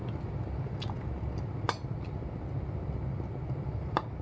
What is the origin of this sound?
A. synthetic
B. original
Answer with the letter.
B